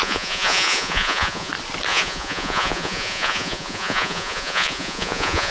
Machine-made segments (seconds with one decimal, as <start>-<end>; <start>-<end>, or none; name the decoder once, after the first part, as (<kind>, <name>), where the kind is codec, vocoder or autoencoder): 0.0-1.5 (vocoder, Vocos); 1.9-5.5